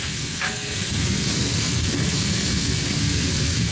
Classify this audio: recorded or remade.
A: remade